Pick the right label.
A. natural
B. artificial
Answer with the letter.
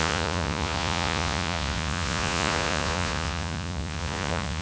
B